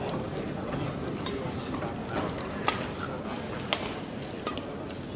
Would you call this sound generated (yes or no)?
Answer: no